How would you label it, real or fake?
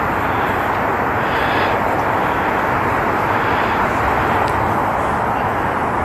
real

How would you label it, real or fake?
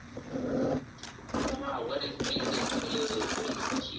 real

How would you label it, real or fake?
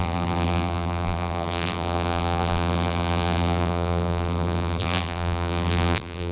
fake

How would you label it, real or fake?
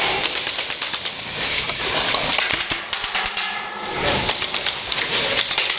fake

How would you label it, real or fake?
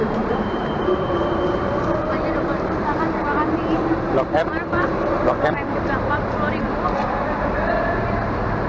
fake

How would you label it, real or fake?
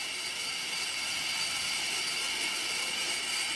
real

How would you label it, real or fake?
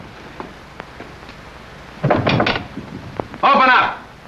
real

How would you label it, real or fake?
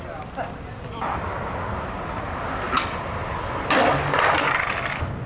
real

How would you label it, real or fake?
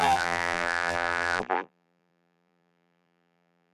fake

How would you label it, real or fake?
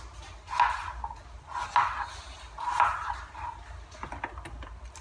real